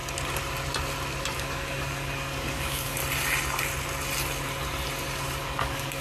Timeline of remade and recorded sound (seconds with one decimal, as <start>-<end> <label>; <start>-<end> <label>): 0.0-1.2 recorded; 1.2-3.0 remade; 3.0-5.4 recorded; 5.4-6.0 remade